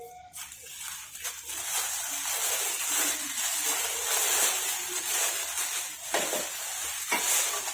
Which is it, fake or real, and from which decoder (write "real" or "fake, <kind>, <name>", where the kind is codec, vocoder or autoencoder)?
real